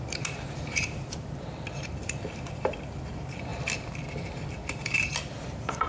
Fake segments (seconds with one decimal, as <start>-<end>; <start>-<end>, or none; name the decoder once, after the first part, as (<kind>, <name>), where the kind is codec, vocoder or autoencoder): 0.0-3.5 (vocoder, BigVGAN v2); 4.5-5.9